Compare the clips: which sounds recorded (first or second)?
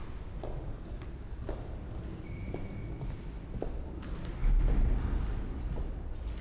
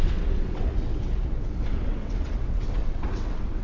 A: first